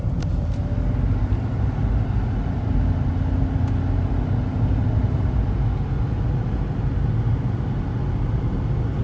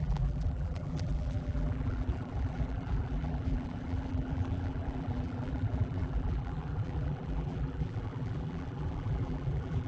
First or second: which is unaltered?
first